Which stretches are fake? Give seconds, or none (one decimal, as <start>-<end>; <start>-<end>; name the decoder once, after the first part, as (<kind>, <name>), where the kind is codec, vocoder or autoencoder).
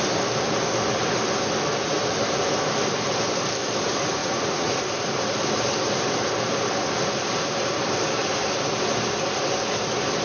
4.2-4.8 (vocoder, Vocos)